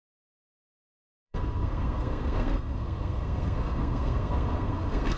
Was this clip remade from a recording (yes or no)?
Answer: yes